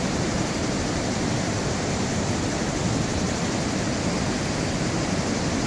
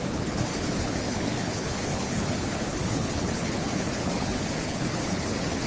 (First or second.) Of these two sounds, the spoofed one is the second